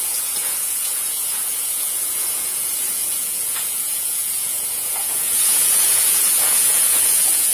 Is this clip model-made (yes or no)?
yes